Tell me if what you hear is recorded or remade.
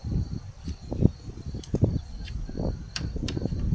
remade